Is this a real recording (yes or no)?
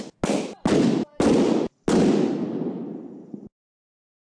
yes